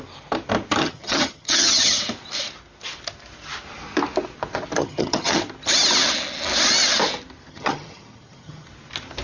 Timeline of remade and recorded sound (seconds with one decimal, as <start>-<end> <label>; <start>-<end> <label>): 0.0-0.8 recorded; 0.8-2.0 remade; 2.0-4.8 recorded; 4.8-5.4 remade; 5.4-7.5 recorded; 7.5-8.7 remade; 8.7-9.2 recorded